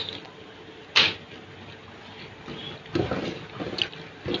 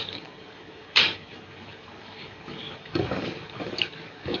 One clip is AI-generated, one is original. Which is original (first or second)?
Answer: first